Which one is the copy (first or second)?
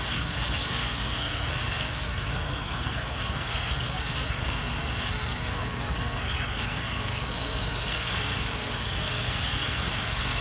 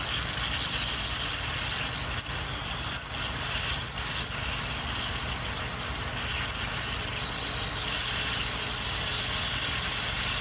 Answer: first